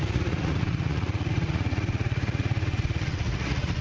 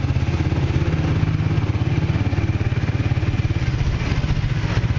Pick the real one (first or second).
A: second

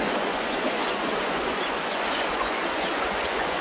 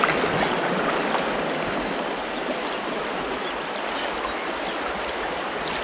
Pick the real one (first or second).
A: second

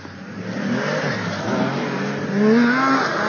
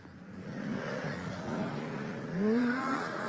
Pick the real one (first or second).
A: first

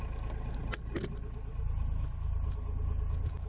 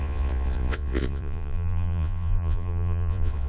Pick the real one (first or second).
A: first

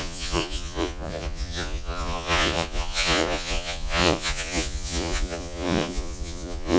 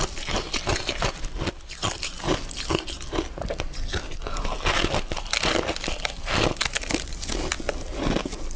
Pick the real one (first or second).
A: second